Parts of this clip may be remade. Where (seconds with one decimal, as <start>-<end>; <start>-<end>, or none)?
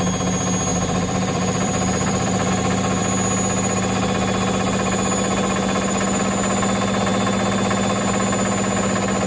0.7-2.5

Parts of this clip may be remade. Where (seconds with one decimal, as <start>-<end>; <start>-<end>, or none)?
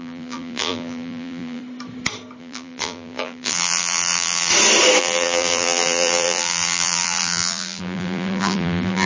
0.0-1.6; 2.4-4.5; 5.0-9.1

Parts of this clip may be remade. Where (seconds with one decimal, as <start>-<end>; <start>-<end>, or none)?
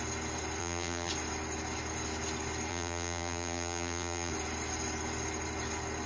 0.6-1.1; 2.7-4.3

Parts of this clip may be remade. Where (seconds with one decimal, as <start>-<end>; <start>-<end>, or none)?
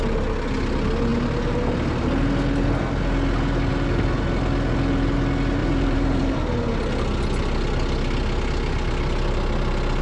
5.6-6.4